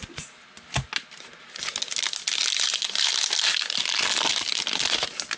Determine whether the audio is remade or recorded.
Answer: recorded